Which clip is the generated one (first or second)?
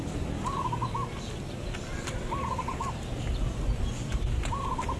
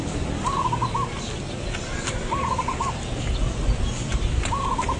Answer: second